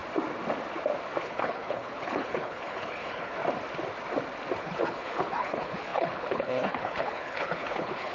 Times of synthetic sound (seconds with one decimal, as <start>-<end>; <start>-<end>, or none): 1.2-3.4; 4.6-8.1